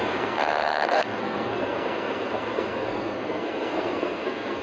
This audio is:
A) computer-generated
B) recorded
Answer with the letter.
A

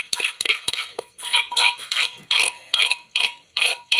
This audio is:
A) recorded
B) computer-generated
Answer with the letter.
B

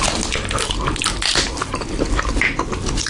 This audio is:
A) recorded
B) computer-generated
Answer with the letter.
A